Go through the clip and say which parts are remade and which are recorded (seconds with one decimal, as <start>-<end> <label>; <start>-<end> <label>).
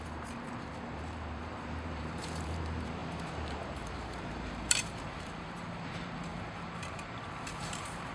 0.0-8.1 remade